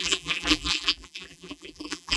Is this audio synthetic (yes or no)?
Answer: yes